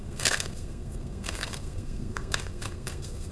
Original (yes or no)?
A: no